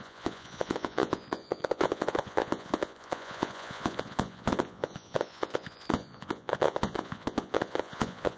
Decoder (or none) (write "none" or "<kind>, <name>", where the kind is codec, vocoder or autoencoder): vocoder, Vocos